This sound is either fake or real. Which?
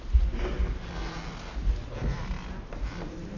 real